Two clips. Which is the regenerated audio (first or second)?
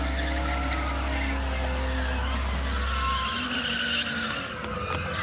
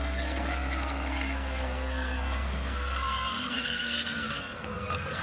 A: second